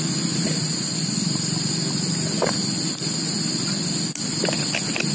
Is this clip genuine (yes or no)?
yes